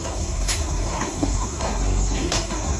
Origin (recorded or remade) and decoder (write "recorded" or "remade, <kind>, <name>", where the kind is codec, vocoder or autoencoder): remade, codec, SNAC